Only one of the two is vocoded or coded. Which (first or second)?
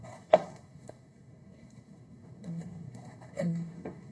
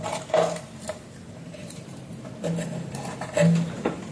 first